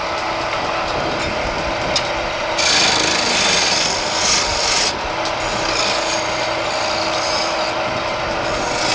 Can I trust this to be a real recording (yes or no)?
yes